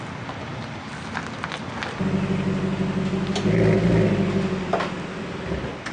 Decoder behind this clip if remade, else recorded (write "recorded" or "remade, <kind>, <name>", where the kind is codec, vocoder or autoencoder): recorded